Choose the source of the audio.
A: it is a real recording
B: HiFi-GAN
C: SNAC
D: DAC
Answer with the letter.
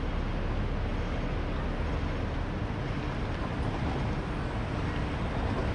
A